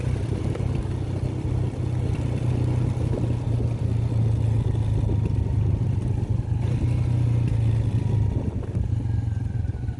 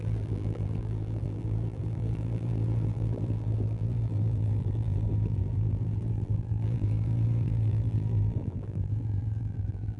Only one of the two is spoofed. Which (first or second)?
second